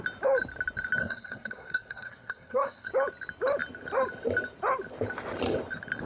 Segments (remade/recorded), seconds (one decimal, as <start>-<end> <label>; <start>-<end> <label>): 0.0-1.0 recorded; 1.0-2.9 remade; 2.9-6.1 recorded